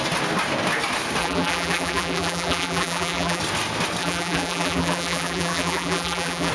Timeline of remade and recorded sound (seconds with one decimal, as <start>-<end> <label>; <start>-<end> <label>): 0.0-1.2 recorded; 1.2-3.4 remade; 3.4-4.0 recorded; 4.0-6.5 remade